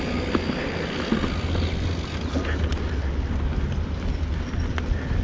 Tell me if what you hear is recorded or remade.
recorded